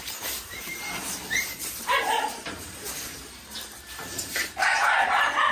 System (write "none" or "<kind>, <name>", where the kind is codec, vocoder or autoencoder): vocoder, BigVGAN v2